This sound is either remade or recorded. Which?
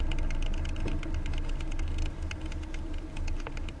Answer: recorded